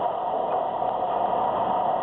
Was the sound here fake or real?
real